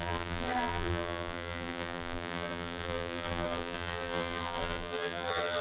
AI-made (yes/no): yes